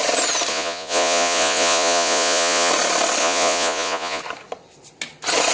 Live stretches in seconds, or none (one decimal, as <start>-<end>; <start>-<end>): 0.0-0.5; 2.7-3.2; 4.2-5.5